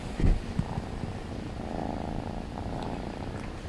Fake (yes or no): no